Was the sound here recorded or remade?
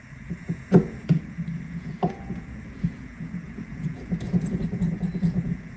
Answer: remade